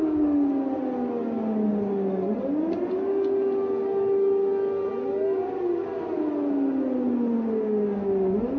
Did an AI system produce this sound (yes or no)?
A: no